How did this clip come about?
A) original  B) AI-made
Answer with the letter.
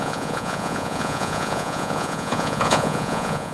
B